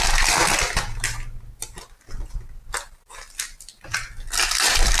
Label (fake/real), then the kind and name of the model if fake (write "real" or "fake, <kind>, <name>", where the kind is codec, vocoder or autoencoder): real